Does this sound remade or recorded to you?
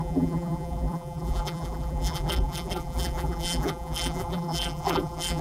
remade